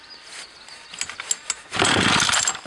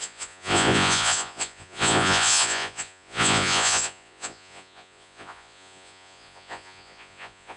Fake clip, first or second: second